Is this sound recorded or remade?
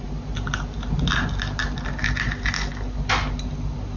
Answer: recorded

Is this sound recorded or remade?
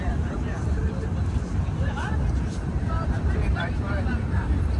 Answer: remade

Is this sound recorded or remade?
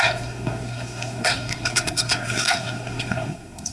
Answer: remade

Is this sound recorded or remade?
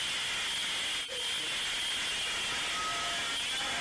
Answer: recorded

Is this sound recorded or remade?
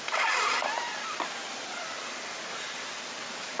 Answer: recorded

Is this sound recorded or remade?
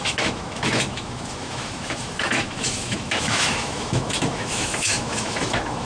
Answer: remade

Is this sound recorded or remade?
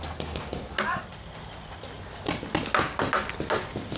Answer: recorded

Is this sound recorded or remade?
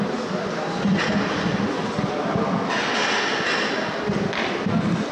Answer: recorded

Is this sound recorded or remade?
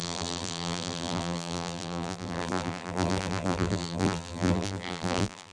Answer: remade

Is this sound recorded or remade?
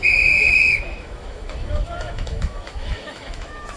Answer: remade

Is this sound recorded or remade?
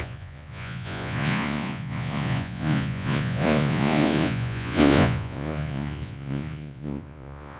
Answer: remade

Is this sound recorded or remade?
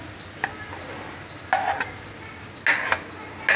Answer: recorded